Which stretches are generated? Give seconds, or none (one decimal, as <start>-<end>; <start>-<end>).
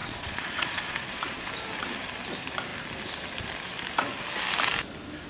0.0-1.5